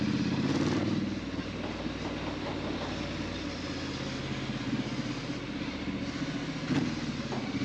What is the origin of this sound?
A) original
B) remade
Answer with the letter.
A